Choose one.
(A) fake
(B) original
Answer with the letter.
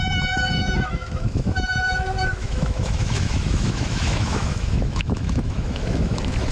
A